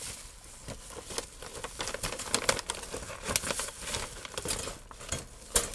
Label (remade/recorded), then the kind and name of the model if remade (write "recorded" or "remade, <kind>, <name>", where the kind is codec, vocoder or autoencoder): recorded